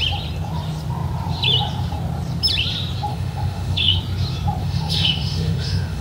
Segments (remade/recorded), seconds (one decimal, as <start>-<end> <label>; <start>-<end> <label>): 0.0-3.1 recorded; 3.1-4.0 remade; 4.0-4.6 recorded; 4.6-6.0 remade